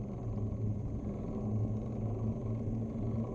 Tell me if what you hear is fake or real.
real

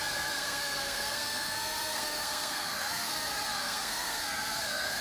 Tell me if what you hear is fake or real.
fake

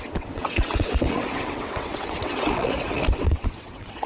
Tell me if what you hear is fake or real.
fake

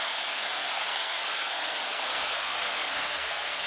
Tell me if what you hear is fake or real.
fake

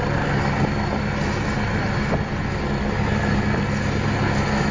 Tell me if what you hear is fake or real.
real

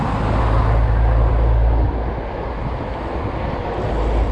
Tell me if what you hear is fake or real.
real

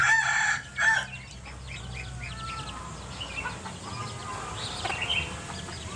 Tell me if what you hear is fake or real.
real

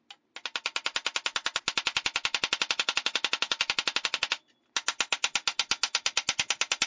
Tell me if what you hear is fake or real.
real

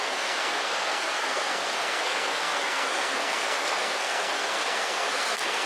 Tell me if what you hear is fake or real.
fake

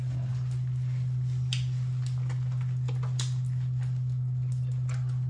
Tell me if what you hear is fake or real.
real